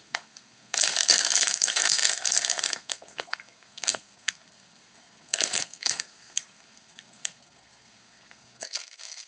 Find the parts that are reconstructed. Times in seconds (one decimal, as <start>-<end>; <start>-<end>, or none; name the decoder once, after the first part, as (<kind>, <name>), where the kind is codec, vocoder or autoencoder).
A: 0.0-9.3 (codec, SNAC)

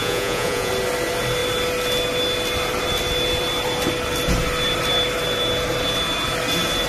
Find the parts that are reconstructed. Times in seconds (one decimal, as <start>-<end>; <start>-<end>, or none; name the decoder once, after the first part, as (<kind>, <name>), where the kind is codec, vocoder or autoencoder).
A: 0.0-0.7 (vocoder, Vocos)

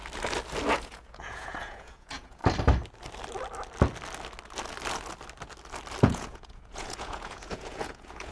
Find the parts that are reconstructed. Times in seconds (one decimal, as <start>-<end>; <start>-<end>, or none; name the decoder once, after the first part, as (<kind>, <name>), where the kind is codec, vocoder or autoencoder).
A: 0.7-2.4 (vocoder, Vocos); 6.0-8.3